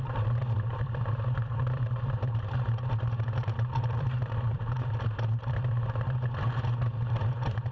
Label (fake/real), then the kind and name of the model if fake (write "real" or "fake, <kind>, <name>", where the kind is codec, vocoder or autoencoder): fake, vocoder, BigVGAN v2